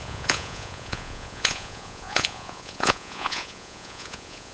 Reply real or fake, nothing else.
fake